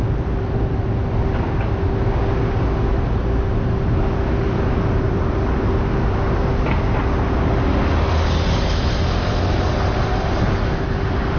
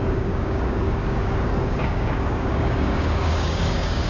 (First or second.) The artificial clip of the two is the second